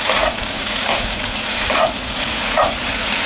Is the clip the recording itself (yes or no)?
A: no